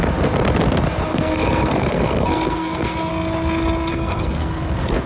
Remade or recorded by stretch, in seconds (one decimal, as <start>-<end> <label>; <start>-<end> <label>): 0.0-1.1 recorded; 1.1-3.1 remade; 3.1-3.9 recorded; 3.9-5.1 remade